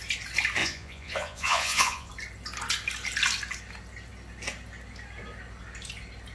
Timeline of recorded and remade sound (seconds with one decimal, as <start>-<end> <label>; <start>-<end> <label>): 0.0-0.6 recorded; 0.6-2.1 remade; 2.1-6.3 recorded